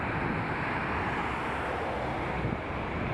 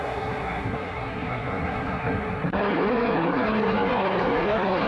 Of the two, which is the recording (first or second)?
first